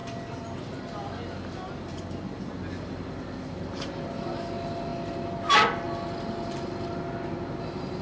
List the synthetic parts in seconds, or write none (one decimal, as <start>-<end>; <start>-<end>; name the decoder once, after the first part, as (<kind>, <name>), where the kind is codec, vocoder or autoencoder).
none